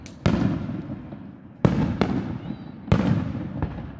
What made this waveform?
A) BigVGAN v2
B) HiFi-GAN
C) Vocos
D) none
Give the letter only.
D